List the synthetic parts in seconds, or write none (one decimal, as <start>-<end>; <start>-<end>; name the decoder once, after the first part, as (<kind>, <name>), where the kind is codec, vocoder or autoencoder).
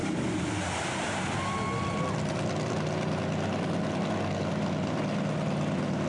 none